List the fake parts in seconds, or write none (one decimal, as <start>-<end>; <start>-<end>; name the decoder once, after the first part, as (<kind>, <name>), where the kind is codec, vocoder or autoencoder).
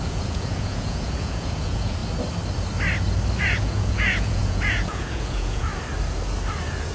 0.0-2.0 (vocoder, Vocos); 3.4-5.7